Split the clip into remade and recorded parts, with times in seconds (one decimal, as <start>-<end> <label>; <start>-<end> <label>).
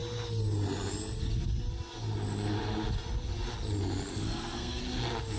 0.0-4.1 recorded; 4.1-4.8 remade; 4.8-5.4 recorded